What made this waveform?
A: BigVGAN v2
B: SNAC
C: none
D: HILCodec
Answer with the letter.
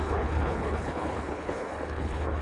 D